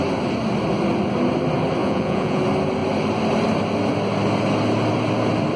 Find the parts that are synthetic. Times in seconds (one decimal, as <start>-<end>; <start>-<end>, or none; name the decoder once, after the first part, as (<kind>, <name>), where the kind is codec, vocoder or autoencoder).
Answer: 1.8-2.4 (vocoder, Vocos)